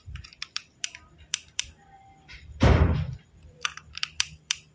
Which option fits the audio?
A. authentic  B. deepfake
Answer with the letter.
B